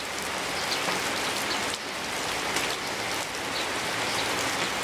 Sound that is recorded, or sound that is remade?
recorded